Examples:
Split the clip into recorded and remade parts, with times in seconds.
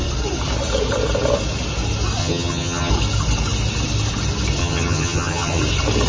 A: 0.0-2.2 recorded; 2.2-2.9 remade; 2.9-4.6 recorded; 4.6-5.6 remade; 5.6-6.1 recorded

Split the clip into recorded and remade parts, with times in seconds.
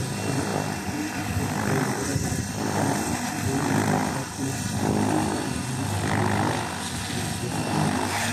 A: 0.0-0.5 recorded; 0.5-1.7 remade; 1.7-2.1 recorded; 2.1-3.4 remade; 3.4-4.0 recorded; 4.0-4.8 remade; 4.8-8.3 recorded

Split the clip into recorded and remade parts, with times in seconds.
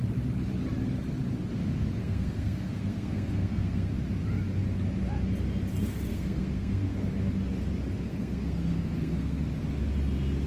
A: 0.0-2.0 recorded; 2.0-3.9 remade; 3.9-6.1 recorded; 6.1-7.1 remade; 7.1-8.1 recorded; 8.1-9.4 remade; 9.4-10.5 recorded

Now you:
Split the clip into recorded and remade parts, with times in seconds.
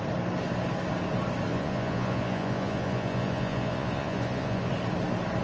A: 0.0-1.5 recorded; 1.5-4.7 remade; 4.7-5.4 recorded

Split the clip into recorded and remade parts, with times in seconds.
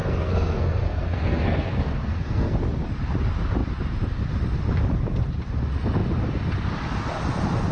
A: 0.0-2.6 remade; 2.6-7.7 recorded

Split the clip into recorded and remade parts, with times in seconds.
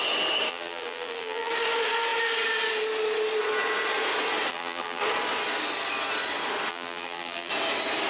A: 0.0-0.5 recorded; 0.5-1.5 remade; 1.5-4.5 recorded; 4.5-5.0 remade; 5.0-6.7 recorded; 6.7-7.5 remade; 7.5-8.1 recorded